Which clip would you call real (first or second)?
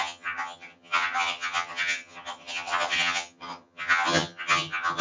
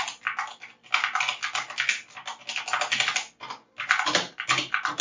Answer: second